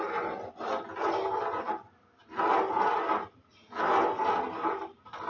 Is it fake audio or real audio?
real